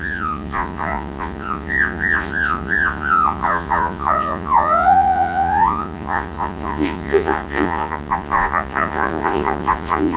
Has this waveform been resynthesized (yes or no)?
yes